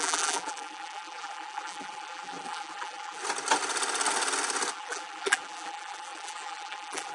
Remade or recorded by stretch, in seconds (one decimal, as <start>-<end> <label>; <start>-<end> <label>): 0.0-3.2 remade; 3.2-4.7 recorded; 4.7-7.1 remade